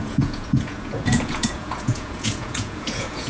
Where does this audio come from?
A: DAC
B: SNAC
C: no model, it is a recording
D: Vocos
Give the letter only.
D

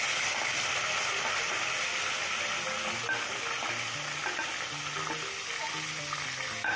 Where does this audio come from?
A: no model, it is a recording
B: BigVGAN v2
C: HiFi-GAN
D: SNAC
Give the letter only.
A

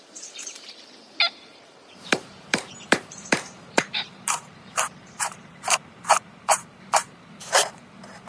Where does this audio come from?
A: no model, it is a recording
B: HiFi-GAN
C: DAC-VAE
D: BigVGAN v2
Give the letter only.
D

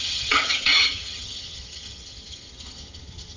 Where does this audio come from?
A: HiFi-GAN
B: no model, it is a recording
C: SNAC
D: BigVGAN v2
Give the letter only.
A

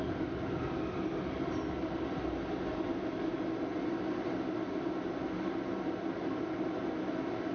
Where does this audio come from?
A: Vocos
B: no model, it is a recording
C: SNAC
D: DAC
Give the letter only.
B